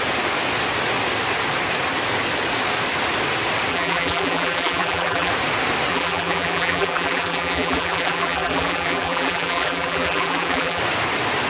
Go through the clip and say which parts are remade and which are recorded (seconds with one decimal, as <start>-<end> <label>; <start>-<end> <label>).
0.0-3.7 recorded; 3.7-5.3 remade; 5.3-5.9 recorded; 5.9-10.8 remade; 10.8-11.5 recorded